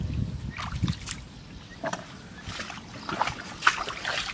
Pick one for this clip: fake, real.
real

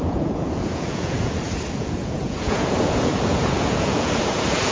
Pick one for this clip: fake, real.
fake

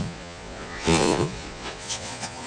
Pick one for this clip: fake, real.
fake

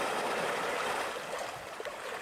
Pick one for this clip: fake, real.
real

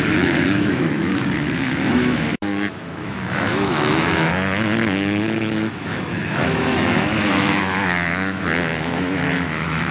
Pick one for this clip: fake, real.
fake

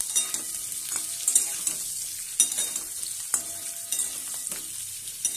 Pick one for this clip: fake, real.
real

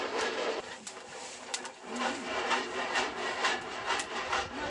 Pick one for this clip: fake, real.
fake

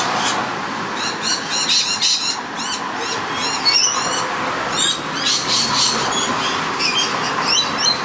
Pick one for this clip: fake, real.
real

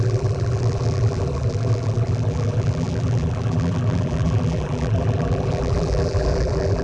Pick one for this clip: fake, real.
fake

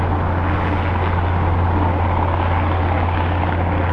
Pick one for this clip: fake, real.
real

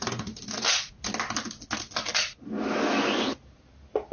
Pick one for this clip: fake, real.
real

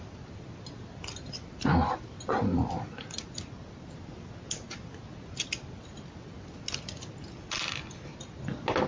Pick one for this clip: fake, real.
real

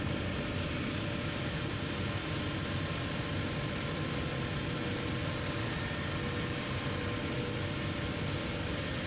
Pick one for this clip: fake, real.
real